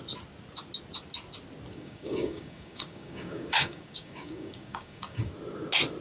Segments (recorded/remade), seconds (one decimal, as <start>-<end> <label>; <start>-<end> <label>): 0.0-1.7 recorded; 1.7-5.3 remade; 5.3-6.0 recorded